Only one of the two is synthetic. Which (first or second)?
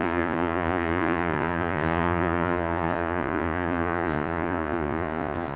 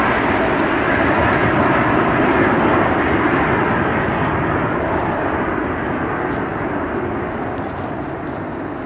first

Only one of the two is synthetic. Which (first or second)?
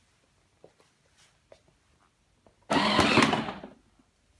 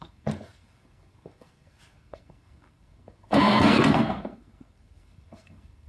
second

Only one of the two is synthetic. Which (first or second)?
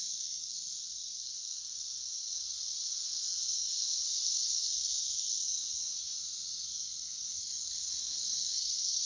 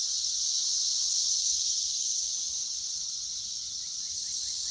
first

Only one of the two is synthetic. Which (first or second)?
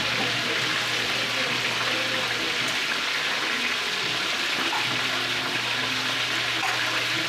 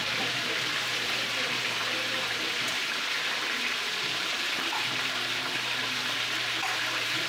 second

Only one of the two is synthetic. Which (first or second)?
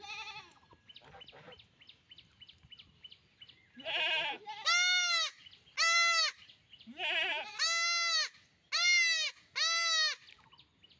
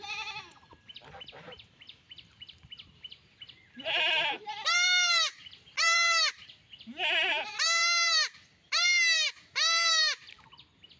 second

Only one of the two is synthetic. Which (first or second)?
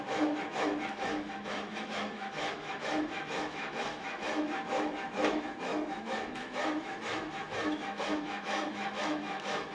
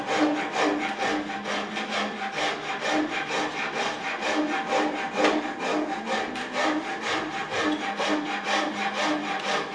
first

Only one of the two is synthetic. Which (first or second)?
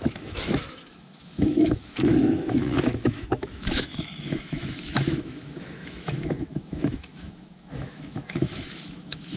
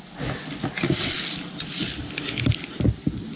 first